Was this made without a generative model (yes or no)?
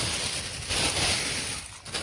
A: yes